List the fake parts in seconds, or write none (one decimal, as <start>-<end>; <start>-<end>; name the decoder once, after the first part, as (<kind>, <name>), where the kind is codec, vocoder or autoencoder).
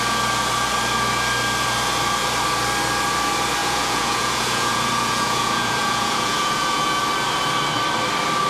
3.6-7.0 (vocoder, Vocos)